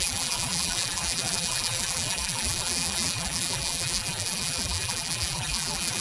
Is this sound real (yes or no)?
no